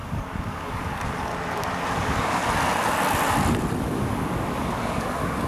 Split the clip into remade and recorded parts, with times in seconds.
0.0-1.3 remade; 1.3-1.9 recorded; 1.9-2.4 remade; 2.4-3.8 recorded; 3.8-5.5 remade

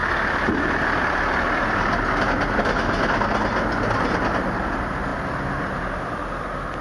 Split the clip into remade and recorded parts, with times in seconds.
0.0-6.8 recorded

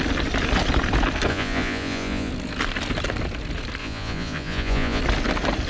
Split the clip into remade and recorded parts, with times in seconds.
0.0-1.3 recorded; 1.3-2.3 remade; 2.3-3.8 recorded; 3.8-5.0 remade; 5.0-5.7 recorded

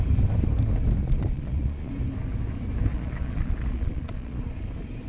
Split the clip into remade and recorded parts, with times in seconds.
0.0-1.0 recorded; 1.0-1.9 remade; 1.9-2.9 recorded; 2.9-4.4 remade; 4.4-5.1 recorded

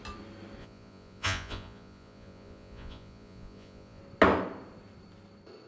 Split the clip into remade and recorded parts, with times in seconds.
0.0-0.6 recorded; 0.6-4.0 remade; 4.0-5.7 recorded

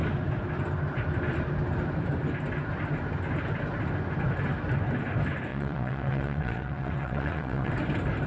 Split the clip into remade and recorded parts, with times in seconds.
0.0-5.5 recorded; 5.5-7.7 remade; 7.7-8.3 recorded

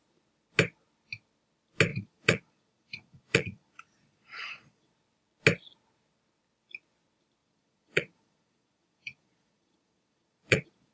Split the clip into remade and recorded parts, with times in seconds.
0.0-1.9 recorded; 1.9-4.9 remade; 4.9-7.4 recorded; 7.4-10.9 remade